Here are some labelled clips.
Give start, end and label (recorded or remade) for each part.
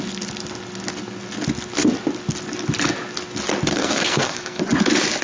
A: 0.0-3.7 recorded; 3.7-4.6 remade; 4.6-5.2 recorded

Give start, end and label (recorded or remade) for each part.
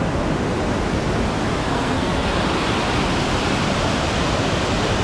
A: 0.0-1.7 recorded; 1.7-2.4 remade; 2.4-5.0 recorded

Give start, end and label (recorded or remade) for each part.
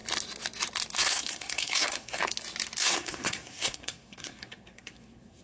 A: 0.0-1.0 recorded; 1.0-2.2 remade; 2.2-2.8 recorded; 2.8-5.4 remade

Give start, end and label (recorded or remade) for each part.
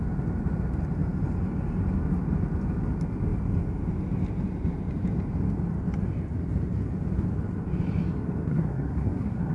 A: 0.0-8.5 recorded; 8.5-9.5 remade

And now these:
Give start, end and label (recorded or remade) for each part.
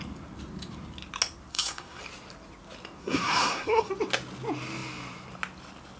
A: 0.0-1.5 recorded; 1.5-2.0 remade; 2.0-3.0 recorded; 3.0-3.9 remade; 3.9-6.0 recorded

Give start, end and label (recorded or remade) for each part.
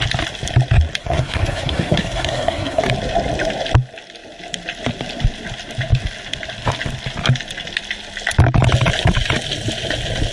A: 0.0-1.0 recorded; 1.0-2.8 remade; 2.8-10.3 recorded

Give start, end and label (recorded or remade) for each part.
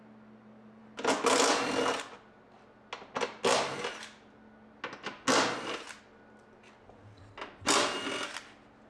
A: 0.0-8.9 recorded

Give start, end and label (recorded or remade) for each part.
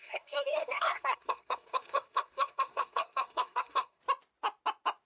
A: 0.0-4.0 remade; 4.0-5.1 recorded